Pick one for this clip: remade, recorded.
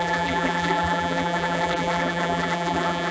remade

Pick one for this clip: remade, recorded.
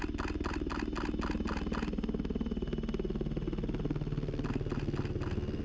recorded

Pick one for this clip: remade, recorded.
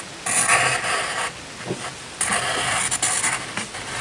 recorded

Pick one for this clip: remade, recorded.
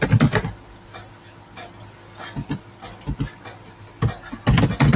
recorded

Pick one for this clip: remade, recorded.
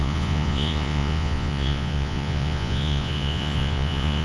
remade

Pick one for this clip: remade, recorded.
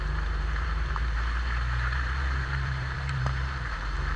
remade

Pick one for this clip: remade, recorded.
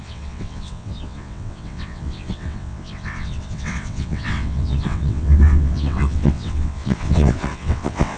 remade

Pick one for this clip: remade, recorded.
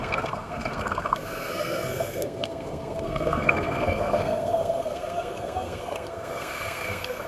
remade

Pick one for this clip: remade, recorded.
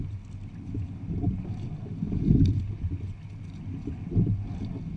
recorded